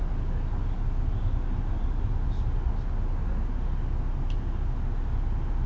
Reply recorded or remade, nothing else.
recorded